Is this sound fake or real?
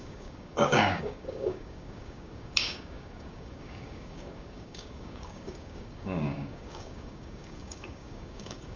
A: fake